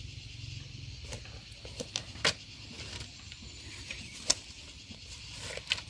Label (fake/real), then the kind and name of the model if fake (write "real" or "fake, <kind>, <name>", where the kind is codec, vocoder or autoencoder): real